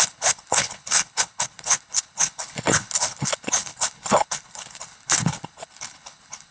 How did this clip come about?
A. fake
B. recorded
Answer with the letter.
A